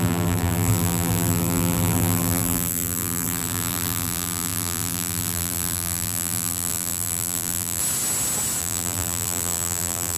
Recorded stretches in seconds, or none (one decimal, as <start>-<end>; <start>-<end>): 7.8-8.6